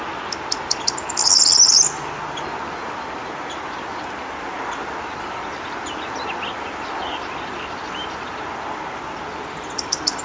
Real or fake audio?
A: real